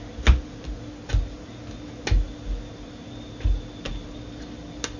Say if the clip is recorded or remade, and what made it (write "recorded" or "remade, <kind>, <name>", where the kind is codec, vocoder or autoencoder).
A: recorded